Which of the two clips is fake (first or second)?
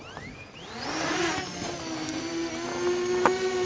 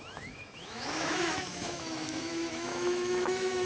second